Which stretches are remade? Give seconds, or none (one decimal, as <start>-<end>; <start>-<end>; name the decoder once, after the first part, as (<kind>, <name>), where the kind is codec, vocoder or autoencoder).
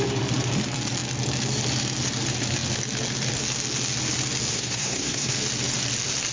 4.5-5.3 (codec, SNAC)